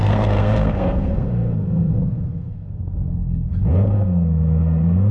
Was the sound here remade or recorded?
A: remade